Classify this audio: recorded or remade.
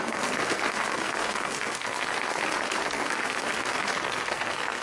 remade